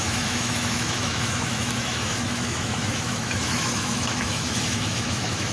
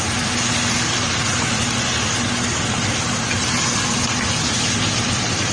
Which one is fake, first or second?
first